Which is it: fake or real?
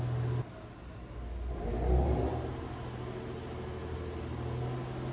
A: real